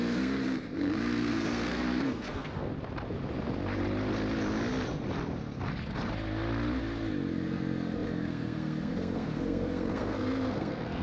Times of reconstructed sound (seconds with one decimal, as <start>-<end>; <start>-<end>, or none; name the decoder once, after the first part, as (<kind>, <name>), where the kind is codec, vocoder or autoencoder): 0.0-2.7 (codec, SNAC); 7.3-11.0